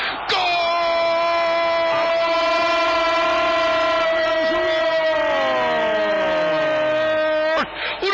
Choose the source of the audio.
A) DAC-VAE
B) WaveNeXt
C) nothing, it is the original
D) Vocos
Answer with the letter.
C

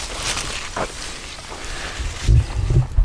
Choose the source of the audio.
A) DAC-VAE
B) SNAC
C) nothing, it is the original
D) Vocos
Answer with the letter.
C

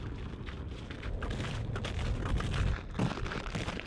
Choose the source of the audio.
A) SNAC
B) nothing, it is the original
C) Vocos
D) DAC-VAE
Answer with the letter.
B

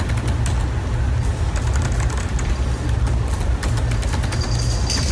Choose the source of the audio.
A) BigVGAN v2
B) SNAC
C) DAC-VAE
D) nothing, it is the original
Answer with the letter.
D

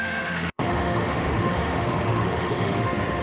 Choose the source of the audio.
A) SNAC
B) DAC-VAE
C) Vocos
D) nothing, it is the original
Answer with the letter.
B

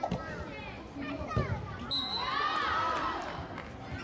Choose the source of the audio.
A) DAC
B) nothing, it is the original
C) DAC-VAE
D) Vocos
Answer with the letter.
B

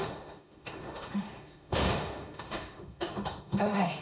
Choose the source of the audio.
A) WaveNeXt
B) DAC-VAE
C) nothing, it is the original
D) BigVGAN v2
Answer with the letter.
B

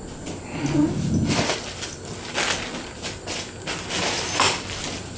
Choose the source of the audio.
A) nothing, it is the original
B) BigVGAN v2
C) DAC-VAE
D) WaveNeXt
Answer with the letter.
A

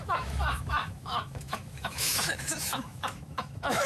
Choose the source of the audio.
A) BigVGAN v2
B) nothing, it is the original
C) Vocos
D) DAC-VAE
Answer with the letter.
D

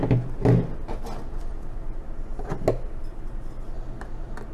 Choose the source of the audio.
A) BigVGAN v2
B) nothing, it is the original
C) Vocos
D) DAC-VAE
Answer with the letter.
B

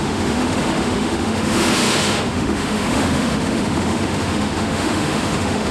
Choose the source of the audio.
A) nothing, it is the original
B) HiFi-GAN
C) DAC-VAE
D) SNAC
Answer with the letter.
C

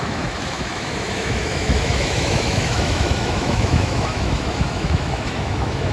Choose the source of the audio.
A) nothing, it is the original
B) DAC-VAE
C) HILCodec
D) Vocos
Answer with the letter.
B